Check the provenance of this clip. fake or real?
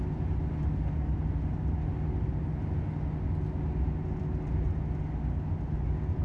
real